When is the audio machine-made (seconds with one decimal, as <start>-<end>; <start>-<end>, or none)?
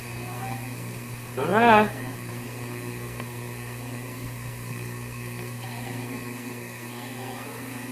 0.0-7.9